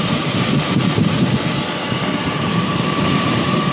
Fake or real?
fake